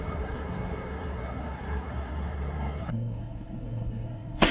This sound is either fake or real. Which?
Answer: fake